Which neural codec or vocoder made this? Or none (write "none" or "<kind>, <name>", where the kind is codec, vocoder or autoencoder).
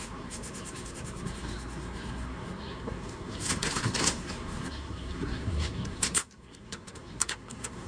codec, SNAC